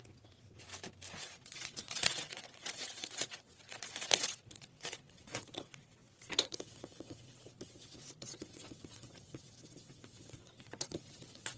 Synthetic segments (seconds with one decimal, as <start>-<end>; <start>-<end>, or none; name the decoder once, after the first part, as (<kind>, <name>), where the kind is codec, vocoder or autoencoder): 0.0-0.7 (vocoder, WaveNeXt); 1.2-11.6